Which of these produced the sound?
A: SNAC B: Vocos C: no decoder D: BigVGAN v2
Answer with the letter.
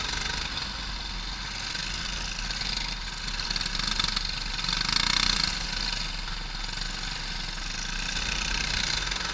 C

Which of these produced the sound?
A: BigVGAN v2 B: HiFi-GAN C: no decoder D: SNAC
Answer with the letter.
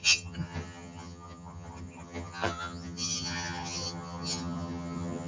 B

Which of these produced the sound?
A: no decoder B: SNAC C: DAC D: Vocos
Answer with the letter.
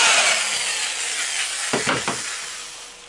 A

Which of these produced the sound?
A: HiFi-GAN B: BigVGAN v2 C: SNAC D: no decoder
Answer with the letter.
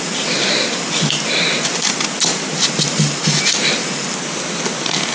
D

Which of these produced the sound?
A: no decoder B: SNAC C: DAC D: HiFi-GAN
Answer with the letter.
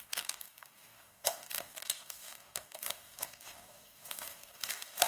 C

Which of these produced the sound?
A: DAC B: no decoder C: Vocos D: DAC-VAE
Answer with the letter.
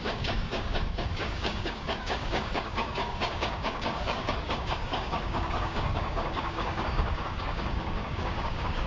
A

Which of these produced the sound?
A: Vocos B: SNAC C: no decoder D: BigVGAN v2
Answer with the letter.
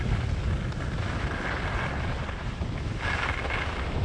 C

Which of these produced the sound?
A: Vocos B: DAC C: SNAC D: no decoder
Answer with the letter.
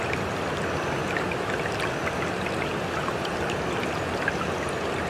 D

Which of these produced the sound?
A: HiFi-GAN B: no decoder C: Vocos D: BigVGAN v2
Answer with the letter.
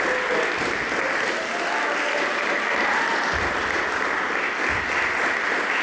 B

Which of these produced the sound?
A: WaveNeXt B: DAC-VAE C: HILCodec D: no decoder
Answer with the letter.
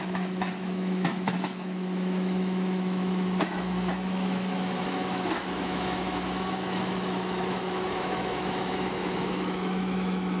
B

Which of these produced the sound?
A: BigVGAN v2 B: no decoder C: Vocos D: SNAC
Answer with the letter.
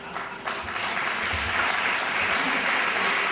B